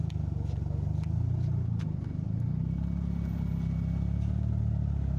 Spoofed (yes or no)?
no